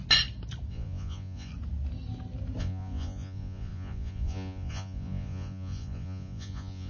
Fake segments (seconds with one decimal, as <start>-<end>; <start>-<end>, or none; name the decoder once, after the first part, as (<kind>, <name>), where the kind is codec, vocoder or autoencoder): 0.7-1.5 (vocoder, Vocos); 2.6-6.9